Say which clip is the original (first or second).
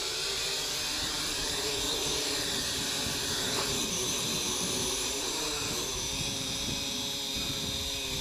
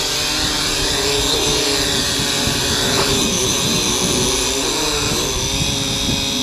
second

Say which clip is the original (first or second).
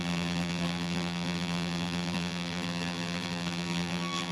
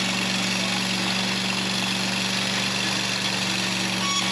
second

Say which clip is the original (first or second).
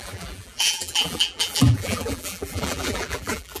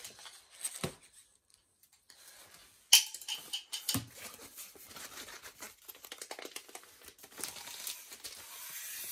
second